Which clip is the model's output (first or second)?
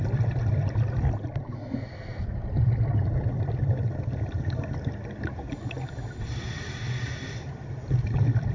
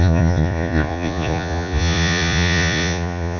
second